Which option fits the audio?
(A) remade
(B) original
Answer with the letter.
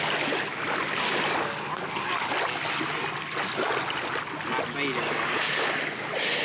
B